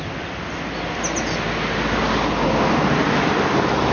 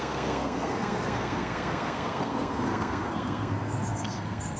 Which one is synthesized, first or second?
second